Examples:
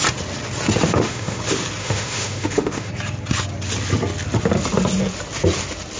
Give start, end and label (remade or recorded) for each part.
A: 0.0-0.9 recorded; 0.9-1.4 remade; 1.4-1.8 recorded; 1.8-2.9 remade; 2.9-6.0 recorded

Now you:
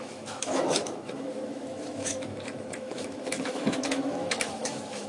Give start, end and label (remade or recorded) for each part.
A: 0.0-5.1 remade